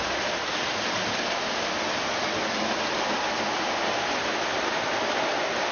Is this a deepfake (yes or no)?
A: no